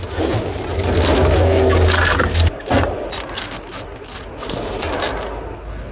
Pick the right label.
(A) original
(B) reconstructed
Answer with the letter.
A